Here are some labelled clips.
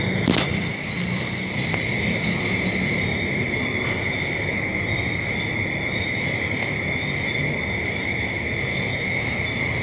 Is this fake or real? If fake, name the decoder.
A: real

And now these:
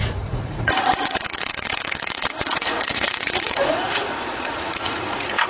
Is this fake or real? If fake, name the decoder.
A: fake, vocoder, Vocos